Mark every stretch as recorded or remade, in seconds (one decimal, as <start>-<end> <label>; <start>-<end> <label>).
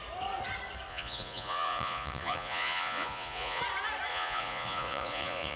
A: 0.0-0.9 recorded; 0.9-3.6 remade; 3.6-4.1 recorded; 4.1-5.6 remade